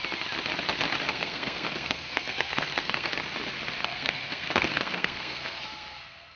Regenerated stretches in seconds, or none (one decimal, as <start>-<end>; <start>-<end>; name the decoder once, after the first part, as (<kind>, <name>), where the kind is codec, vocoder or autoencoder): 1.1-3.1 (codec, SNAC); 3.8-6.4